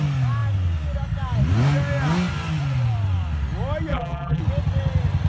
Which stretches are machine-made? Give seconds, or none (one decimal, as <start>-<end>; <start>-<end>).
3.9-4.4